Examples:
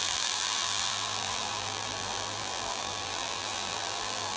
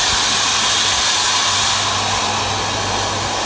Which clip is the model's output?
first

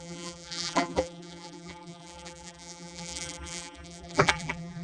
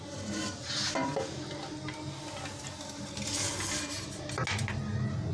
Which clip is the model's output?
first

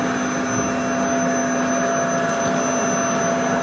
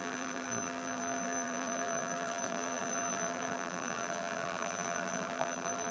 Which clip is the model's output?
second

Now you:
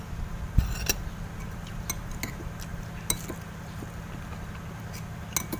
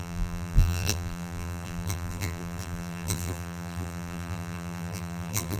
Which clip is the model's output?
second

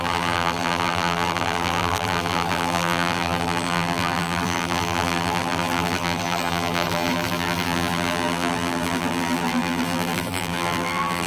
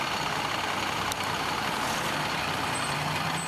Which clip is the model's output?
first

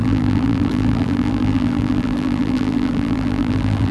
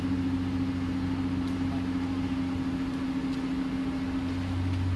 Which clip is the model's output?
first